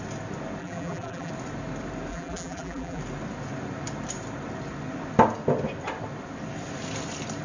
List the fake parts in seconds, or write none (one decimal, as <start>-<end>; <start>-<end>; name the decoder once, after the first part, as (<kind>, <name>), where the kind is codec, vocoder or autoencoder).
0.6-1.3 (vocoder, BigVGAN v2); 2.1-3.0